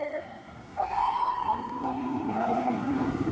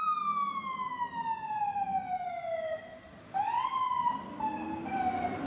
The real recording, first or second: second